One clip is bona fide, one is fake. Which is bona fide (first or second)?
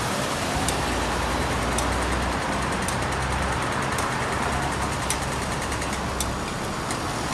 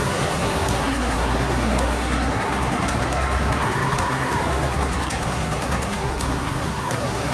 first